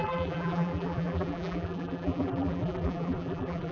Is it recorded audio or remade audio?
remade